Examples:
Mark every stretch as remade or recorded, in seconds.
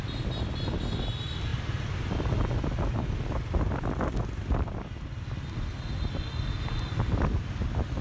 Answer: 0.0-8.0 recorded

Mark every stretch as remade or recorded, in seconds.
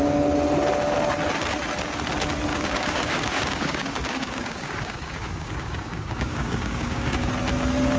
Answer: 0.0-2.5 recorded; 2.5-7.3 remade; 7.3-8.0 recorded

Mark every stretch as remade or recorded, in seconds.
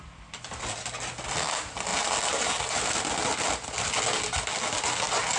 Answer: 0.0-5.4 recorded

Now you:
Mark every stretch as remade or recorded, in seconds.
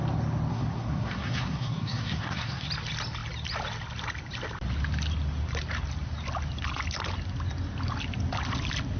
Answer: 0.0-0.5 recorded; 0.5-2.7 remade; 2.7-9.0 recorded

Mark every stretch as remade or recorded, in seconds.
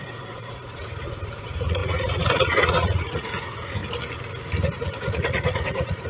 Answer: 0.0-3.8 remade; 3.8-4.7 recorded; 4.7-6.1 remade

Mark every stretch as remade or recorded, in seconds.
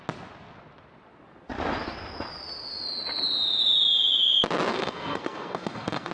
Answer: 0.0-4.7 recorded; 4.7-6.1 remade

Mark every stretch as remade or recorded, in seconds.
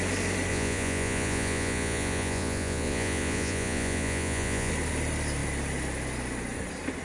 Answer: 0.0-0.5 recorded; 0.5-4.7 remade; 4.7-7.0 recorded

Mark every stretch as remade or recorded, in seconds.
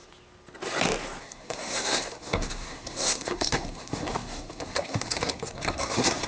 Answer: 0.0-1.2 recorded; 1.2-6.3 remade